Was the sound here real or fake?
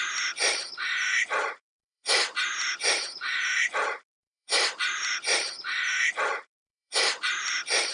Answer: fake